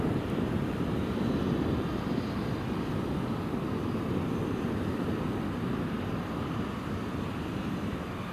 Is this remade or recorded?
recorded